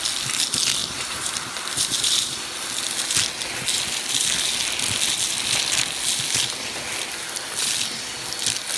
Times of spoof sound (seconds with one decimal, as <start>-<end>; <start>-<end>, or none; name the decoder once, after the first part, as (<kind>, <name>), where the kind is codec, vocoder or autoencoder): 0.8-2.4 (vocoder, BigVGAN v2)